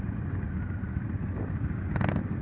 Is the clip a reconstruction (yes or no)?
no